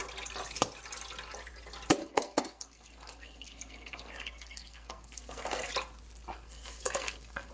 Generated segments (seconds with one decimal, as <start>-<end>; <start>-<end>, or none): 2.0-5.7; 6.3-7.5